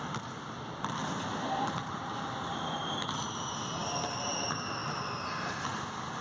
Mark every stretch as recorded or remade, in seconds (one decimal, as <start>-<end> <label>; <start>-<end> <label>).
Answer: 0.0-6.2 recorded

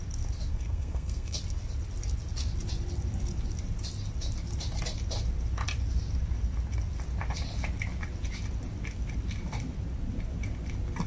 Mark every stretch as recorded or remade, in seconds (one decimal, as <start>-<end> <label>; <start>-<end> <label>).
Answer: 0.0-0.5 recorded; 0.5-1.4 remade; 1.4-11.1 recorded

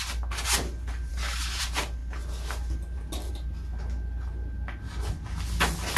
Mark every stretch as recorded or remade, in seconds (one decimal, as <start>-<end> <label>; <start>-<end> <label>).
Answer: 0.0-6.0 recorded

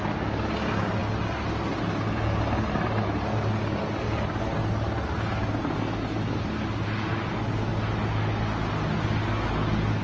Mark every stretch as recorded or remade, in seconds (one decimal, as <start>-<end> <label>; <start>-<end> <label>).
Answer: 0.0-10.0 recorded